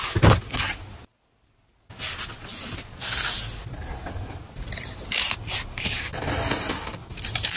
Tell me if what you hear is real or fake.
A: real